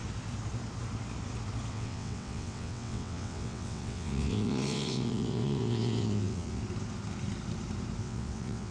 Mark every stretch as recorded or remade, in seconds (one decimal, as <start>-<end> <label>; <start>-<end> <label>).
0.0-1.7 recorded; 1.7-6.6 remade; 6.6-8.0 recorded; 8.0-8.7 remade